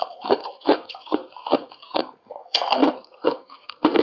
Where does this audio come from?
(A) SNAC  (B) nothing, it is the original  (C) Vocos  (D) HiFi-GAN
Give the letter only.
A